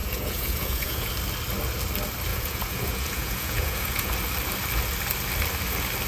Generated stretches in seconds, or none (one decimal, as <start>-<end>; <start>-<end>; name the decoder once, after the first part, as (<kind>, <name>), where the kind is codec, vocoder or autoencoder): 0.0-1.1 (vocoder, Vocos); 2.3-4.1